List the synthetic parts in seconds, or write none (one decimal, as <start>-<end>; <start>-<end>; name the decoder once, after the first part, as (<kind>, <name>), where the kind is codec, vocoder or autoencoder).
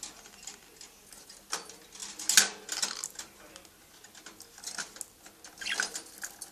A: none